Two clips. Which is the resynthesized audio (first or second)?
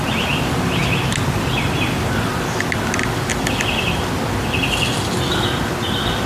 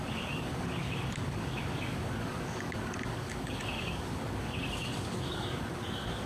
second